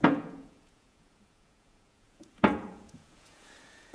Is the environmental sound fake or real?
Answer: fake